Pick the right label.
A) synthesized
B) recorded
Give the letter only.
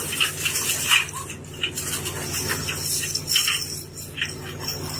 B